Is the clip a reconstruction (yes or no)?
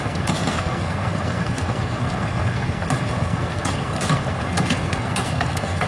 yes